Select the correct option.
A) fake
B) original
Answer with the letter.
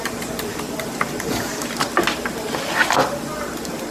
B